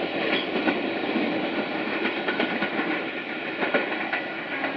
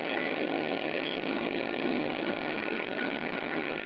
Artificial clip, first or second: second